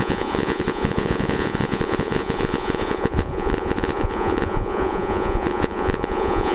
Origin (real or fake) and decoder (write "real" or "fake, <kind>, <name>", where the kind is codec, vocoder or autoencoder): fake, vocoder, Vocos